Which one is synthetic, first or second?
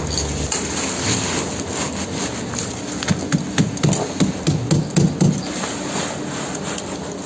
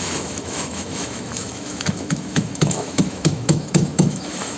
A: second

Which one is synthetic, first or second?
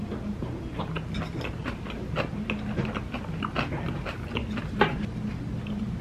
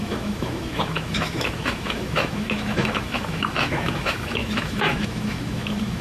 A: second